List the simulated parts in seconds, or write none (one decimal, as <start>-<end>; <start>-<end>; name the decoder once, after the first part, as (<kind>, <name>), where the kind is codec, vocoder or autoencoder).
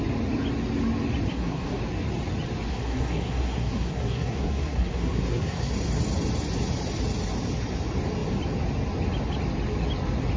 1.3-1.8 (codec, SNAC); 2.7-5.7